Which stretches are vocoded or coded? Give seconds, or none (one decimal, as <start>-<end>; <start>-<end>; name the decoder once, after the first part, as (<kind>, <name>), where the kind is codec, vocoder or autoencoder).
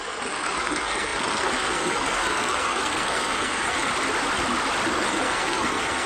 0.0-3.9 (codec, SNAC); 4.9-6.1